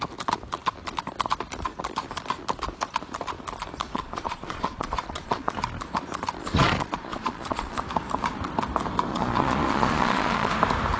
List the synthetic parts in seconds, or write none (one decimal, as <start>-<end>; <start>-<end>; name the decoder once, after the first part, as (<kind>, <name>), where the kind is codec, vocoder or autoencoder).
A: 3.9-5.5 (vocoder, Vocos); 6.4-7.8; 9.1-10.5